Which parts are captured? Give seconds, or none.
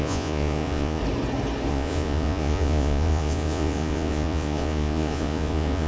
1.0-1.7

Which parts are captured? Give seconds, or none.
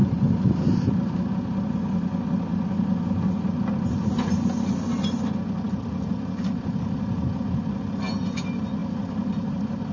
0.0-9.9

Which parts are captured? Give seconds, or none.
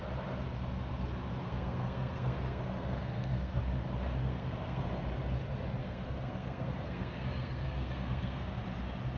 0.0-1.4; 3.6-4.2; 4.8-5.8; 8.6-9.2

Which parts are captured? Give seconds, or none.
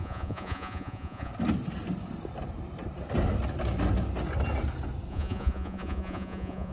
1.3-5.1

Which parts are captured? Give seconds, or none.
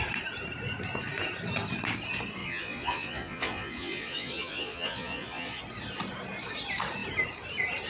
0.0-2.4; 5.6-7.9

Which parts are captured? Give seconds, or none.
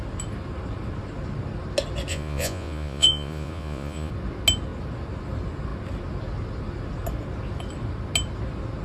0.0-2.1; 4.1-8.8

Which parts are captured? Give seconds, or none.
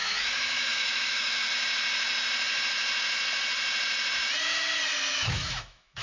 1.5-5.1